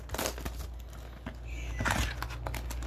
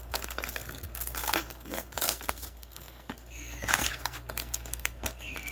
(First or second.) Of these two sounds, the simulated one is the second